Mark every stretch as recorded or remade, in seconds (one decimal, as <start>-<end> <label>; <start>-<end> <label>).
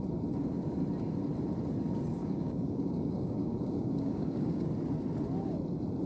0.0-2.2 recorded; 2.2-4.7 remade; 4.7-6.1 recorded